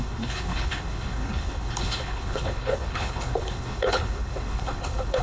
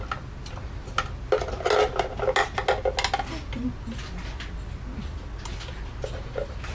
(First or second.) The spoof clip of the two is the first